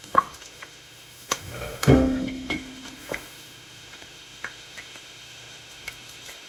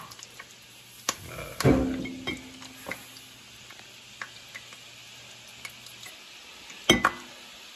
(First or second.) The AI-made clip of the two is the first